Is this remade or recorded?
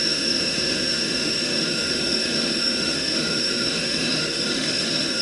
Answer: remade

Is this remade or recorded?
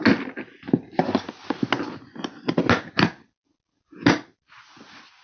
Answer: recorded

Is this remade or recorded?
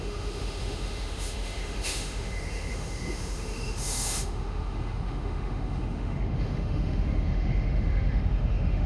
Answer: remade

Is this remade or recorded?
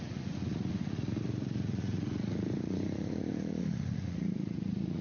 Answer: remade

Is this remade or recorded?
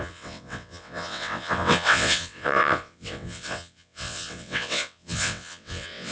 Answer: remade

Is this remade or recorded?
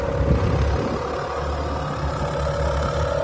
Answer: recorded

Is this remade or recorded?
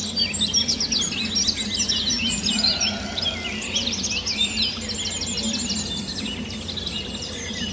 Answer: recorded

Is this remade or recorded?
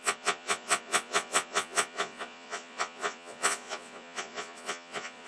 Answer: remade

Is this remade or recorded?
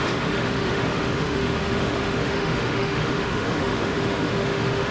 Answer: remade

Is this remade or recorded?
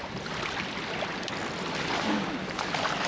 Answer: recorded